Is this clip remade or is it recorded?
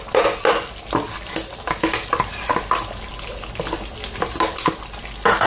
recorded